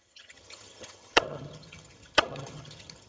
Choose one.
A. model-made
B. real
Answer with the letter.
A